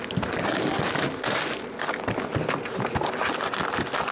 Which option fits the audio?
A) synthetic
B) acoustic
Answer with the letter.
B